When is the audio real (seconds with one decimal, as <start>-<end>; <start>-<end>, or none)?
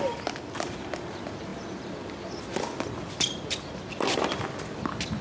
0.0-5.2